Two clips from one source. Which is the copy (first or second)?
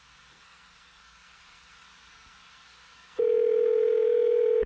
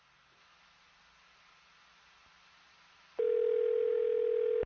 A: first